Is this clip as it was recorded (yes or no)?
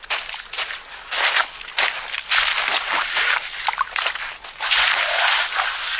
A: yes